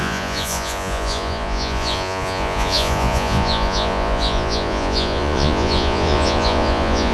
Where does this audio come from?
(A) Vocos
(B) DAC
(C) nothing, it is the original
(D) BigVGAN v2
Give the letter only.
A